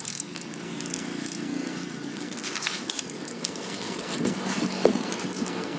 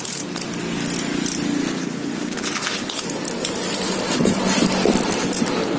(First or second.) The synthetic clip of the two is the first